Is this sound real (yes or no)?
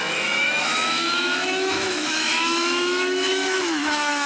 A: no